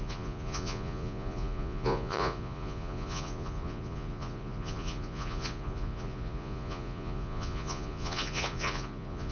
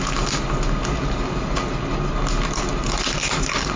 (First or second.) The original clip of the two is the second